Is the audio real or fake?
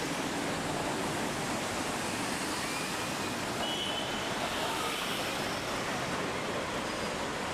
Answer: fake